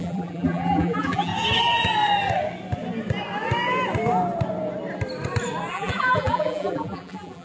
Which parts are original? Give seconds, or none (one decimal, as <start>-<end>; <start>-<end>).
1.3-5.7